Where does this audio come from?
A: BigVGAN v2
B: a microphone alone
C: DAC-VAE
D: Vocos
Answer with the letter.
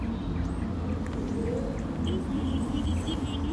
B